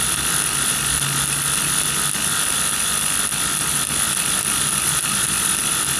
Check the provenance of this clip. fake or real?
real